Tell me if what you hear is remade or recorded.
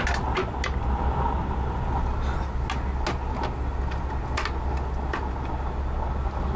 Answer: recorded